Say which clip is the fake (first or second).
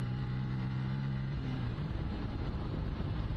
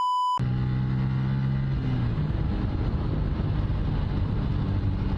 first